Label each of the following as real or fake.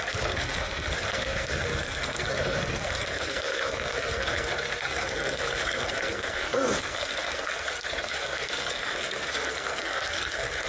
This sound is fake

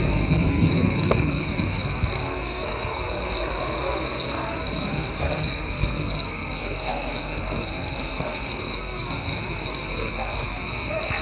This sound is fake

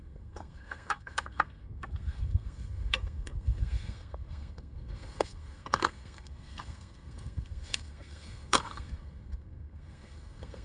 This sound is fake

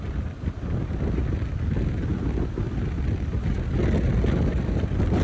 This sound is real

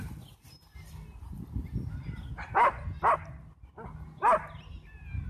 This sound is real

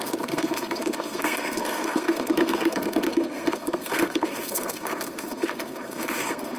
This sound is fake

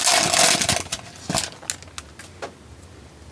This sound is real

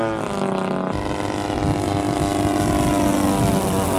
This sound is real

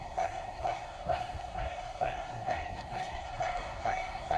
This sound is fake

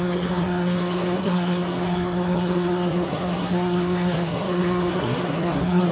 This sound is fake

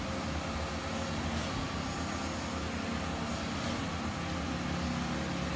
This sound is real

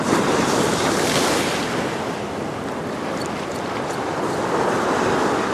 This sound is real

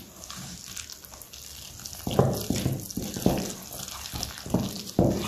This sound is real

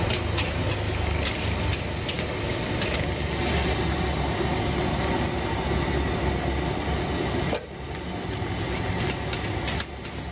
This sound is real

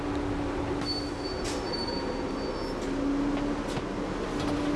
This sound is real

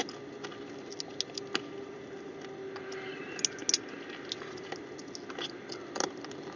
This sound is real